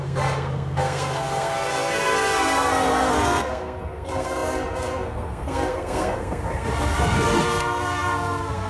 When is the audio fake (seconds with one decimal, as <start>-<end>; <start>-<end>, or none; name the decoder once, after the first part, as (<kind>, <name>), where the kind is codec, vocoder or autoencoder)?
0.0-8.7 (codec, SNAC)